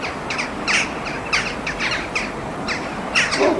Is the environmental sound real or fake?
real